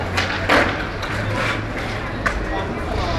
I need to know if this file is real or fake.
real